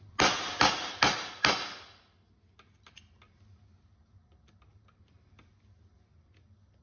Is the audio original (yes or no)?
yes